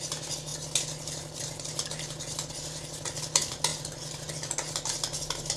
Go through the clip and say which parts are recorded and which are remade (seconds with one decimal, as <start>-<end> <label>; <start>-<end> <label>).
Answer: 0.0-5.6 recorded